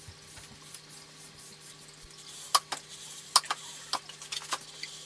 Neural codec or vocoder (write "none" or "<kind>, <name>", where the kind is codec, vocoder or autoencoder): none